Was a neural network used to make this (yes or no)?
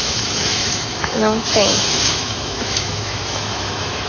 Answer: yes